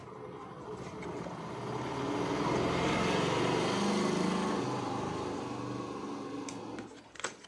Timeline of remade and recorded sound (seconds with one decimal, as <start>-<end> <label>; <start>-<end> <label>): 0.0-7.5 recorded